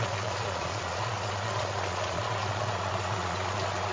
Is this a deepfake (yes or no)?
yes